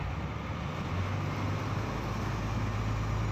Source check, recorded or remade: recorded